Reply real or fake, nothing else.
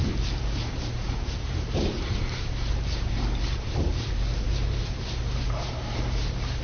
fake